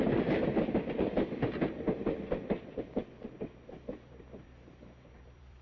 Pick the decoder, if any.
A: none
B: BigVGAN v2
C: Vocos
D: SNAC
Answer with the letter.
B